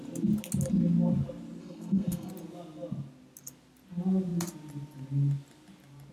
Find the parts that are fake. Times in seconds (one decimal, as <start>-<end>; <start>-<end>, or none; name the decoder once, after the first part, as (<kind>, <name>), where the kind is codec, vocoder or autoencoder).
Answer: 1.6-2.3 (codec, SNAC)